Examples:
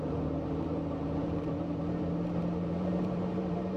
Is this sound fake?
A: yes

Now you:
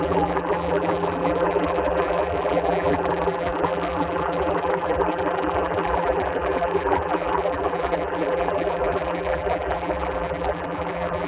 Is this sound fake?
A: yes